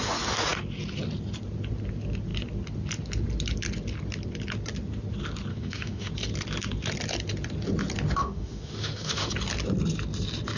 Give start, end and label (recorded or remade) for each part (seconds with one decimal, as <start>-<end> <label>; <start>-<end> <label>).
0.0-5.5 recorded; 5.5-6.1 remade; 6.1-8.2 recorded; 8.2-9.3 remade; 9.3-10.6 recorded